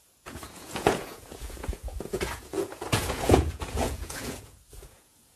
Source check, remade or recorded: remade